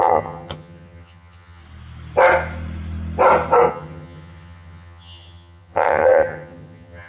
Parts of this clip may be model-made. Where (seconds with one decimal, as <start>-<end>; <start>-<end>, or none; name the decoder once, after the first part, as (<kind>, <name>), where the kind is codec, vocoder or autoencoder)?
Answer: 0.0-1.6 (vocoder, HiFi-GAN); 3.7-7.1